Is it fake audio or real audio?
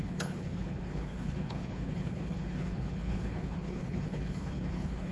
fake